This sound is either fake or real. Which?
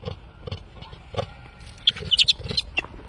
real